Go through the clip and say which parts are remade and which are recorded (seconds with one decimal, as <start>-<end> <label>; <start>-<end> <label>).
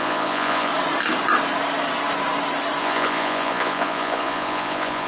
0.0-0.7 remade; 0.7-2.8 recorded; 2.8-5.1 remade